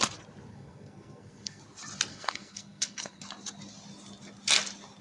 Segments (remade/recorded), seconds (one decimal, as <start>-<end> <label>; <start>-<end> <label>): 0.0-0.5 recorded; 0.5-1.6 remade; 1.6-2.1 recorded; 2.1-3.2 remade; 3.2-5.0 recorded